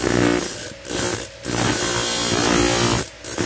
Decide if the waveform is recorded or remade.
recorded